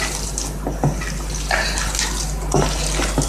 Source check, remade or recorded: recorded